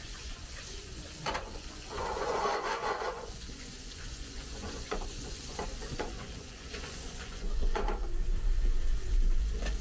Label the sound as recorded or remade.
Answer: remade